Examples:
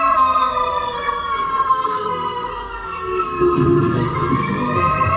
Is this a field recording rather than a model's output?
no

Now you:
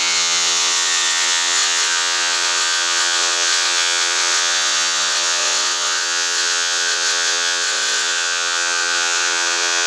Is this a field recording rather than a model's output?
no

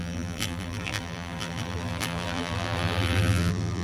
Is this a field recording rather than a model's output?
no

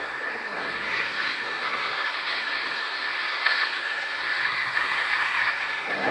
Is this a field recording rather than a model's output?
no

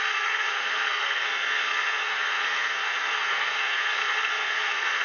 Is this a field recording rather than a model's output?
no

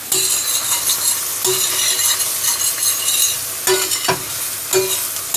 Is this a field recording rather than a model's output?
yes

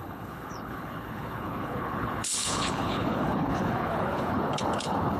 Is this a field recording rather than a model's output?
no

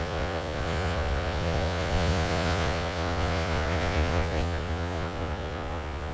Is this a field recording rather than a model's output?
no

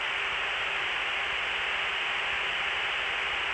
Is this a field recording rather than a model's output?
yes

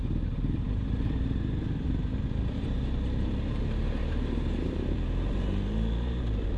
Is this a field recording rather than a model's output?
no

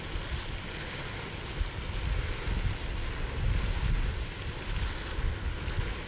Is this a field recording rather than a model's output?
yes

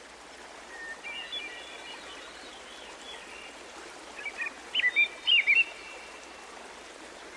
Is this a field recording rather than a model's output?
yes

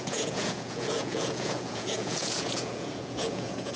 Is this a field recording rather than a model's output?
no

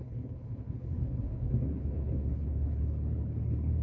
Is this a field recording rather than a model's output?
no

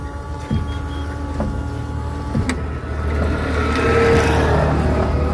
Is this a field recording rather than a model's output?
yes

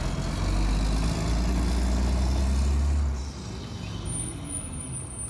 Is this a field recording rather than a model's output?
yes